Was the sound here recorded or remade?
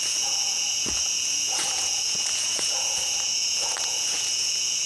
remade